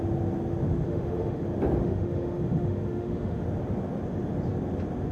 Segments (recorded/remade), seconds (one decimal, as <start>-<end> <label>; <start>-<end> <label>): 0.0-0.7 recorded; 0.7-1.4 remade; 1.4-1.8 recorded; 1.8-3.4 remade; 3.4-5.1 recorded